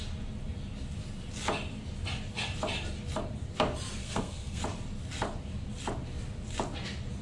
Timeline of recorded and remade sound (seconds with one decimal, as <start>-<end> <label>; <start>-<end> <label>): 0.0-4.0 recorded; 4.0-4.6 remade; 4.6-7.2 recorded